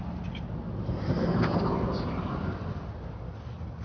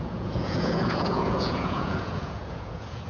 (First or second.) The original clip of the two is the first